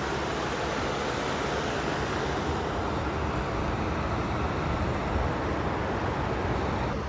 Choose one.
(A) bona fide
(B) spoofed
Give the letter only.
A